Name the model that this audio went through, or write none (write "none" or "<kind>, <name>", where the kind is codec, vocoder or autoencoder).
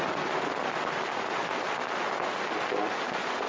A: none